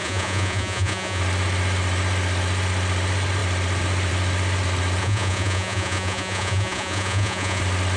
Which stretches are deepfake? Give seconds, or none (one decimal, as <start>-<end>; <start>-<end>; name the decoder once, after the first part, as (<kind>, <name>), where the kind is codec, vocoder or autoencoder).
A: 0.0-1.2 (vocoder, Vocos); 5.0-7.6